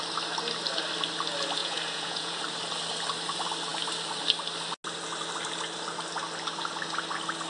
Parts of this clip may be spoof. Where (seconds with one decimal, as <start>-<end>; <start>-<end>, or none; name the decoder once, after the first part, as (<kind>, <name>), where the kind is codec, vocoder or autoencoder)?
1.6-2.4 (vocoder, Vocos)